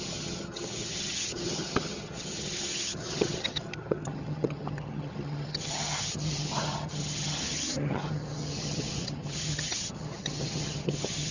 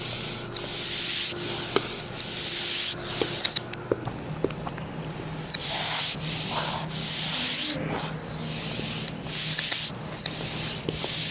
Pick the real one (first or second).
second